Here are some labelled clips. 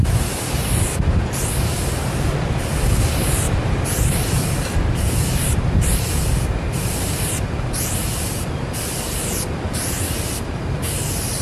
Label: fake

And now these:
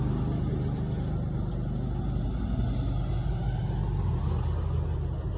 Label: real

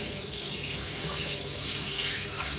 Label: fake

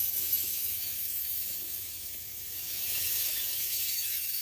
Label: fake